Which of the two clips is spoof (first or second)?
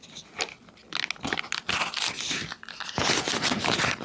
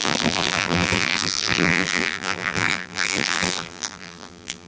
second